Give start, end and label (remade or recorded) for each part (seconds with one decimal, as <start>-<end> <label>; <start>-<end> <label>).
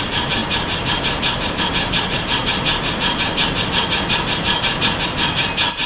0.0-0.4 remade; 0.4-1.6 recorded; 1.6-2.4 remade; 2.4-5.9 recorded